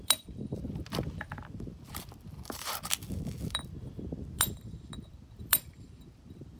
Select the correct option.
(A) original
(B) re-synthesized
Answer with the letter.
B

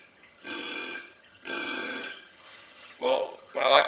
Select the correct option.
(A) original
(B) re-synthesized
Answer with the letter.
B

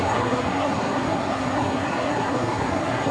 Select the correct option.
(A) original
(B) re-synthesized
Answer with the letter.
B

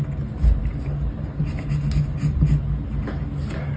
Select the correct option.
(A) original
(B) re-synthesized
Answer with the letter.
A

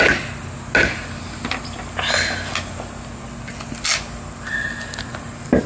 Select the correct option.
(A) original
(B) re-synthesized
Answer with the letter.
A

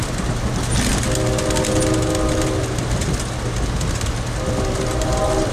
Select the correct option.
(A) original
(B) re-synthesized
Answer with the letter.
A